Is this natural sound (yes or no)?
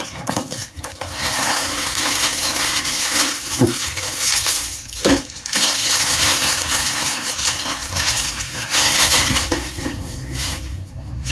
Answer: no